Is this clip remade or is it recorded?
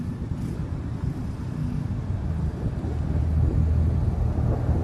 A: recorded